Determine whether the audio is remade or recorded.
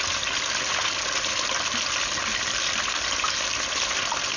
recorded